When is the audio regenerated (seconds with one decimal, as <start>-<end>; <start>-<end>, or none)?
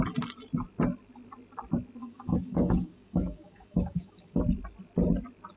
2.0-4.4